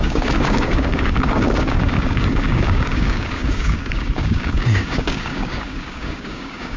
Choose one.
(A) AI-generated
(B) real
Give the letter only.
A